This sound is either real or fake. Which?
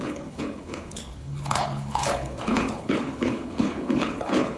fake